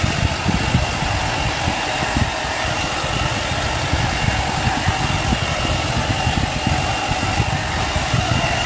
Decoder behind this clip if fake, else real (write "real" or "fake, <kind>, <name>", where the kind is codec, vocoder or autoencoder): real